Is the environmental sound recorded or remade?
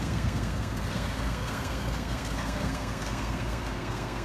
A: remade